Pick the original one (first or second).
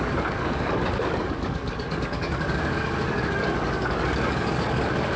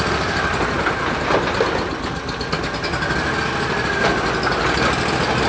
second